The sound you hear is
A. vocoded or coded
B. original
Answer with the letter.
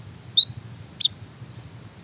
B